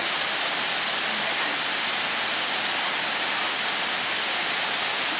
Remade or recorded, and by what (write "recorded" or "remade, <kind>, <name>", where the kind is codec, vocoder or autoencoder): recorded